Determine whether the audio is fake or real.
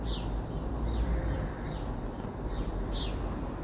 real